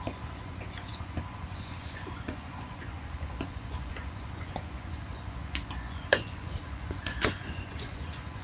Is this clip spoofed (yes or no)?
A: yes